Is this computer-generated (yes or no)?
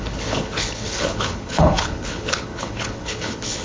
yes